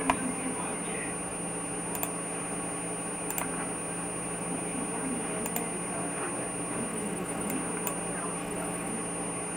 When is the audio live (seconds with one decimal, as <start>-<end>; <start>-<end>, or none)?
0.0-6.9; 7.5-8.4; 8.9-9.6